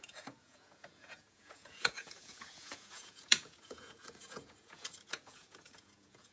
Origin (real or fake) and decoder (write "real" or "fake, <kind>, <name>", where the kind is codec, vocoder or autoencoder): fake, vocoder, Vocos